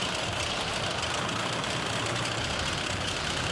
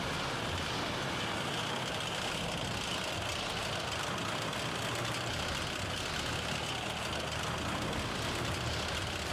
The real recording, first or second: second